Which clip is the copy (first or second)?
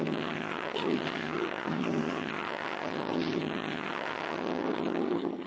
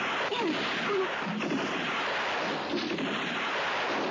first